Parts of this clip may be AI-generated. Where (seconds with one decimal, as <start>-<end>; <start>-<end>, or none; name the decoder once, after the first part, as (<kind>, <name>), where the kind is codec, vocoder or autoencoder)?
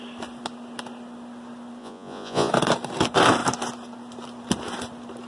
1.8-2.5 (vocoder, Vocos)